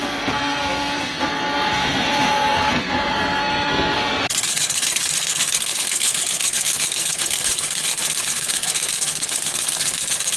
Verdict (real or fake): fake